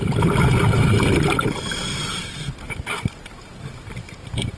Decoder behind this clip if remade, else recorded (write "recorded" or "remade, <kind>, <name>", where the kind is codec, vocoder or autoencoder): recorded